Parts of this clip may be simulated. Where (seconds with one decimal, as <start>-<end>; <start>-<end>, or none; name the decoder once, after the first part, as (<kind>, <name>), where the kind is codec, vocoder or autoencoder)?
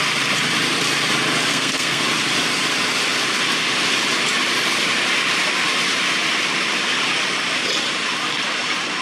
1.5-2.0 (codec, SNAC)